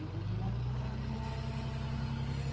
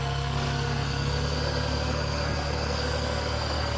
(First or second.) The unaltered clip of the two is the first